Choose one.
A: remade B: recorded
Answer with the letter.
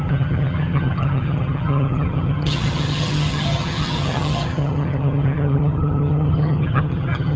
A